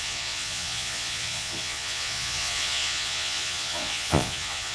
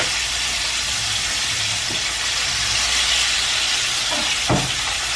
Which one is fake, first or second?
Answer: first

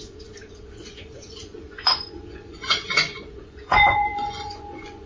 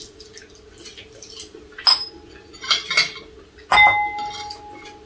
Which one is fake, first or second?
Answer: first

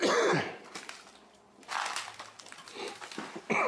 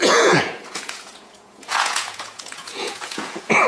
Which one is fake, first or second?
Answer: second